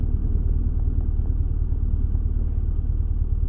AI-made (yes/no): no